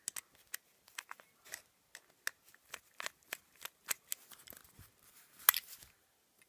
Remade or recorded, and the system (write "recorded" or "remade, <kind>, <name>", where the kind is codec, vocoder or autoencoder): recorded